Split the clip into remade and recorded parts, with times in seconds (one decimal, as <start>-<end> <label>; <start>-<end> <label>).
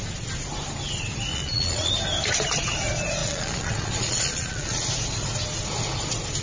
0.0-1.3 recorded; 1.3-1.9 remade; 1.9-3.2 recorded; 3.2-4.9 remade; 4.9-6.4 recorded